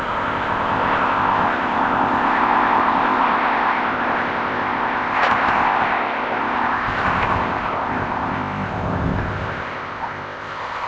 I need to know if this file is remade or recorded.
remade